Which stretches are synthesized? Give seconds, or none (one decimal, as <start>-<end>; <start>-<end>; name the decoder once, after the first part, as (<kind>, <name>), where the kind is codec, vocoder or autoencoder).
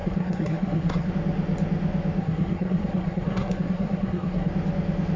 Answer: 0.0-1.1 (codec, SNAC); 2.2-4.5